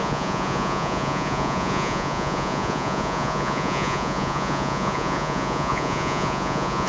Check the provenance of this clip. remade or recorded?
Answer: remade